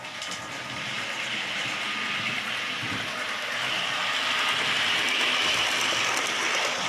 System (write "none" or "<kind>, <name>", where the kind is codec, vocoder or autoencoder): none